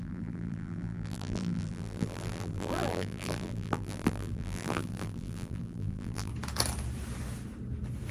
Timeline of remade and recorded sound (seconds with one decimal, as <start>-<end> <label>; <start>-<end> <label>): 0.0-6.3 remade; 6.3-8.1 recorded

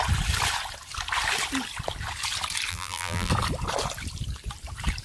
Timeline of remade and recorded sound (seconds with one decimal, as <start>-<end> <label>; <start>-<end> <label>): 0.0-2.7 recorded; 2.7-3.3 remade; 3.3-5.0 recorded

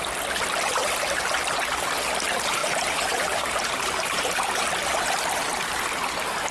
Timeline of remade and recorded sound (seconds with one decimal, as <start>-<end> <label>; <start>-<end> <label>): 0.0-2.6 recorded; 2.6-4.7 remade; 4.7-6.5 recorded